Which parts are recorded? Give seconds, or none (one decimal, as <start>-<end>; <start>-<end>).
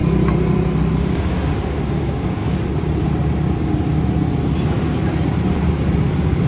0.0-0.9; 2.4-6.5